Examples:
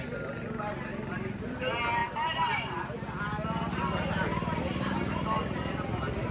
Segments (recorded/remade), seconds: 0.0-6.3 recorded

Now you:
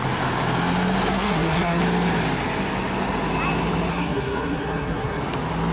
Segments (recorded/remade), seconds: 0.0-1.1 recorded; 1.1-1.8 remade; 1.8-3.9 recorded; 3.9-5.2 remade; 5.2-5.7 recorded

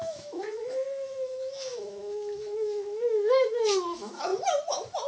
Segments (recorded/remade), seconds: 0.0-4.3 remade; 4.3-5.1 recorded